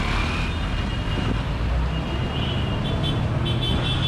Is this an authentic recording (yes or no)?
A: yes